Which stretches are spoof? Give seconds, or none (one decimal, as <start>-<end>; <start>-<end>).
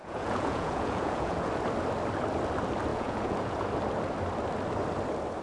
0.0-1.5; 2.9-3.6